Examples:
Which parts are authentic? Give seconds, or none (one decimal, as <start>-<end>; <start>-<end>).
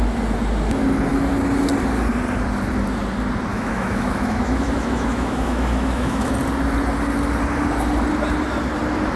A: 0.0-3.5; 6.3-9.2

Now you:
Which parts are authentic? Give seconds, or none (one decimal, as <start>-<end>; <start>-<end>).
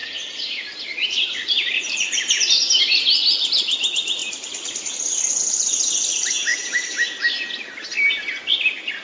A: 2.8-6.5; 7.2-9.0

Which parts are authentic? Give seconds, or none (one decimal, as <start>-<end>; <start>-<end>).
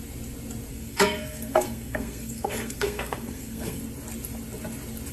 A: 0.0-0.7; 3.8-5.1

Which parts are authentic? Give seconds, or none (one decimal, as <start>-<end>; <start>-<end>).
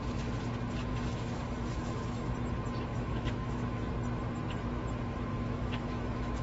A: 0.0-0.9; 2.3-2.9; 3.9-5.3